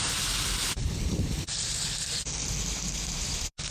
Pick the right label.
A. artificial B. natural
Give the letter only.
B